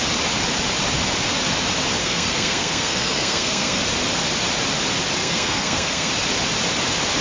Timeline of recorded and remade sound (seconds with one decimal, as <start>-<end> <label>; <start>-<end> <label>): 0.0-2.0 recorded; 2.0-3.8 remade; 3.8-5.2 recorded; 5.2-6.1 remade; 6.1-7.2 recorded